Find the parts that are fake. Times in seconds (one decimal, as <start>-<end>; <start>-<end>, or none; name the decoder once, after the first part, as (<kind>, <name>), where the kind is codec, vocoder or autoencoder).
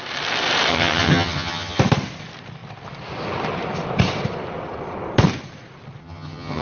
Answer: 0.7-1.8 (vocoder, HiFi-GAN); 6.0-6.6